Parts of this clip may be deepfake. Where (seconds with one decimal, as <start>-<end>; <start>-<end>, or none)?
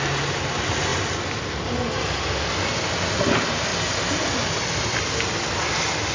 none